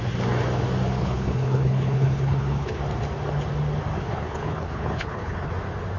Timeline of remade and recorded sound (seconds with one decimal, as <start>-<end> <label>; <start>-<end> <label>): 0.0-1.0 recorded; 1.0-2.8 remade; 2.8-3.9 recorded; 3.9-5.5 remade; 5.5-6.0 recorded